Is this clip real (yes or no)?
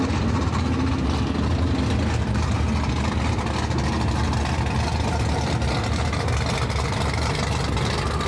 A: yes